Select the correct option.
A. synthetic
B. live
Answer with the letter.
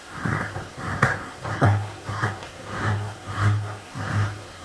A